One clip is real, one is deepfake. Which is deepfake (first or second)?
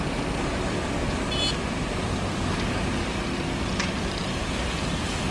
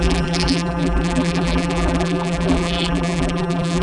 second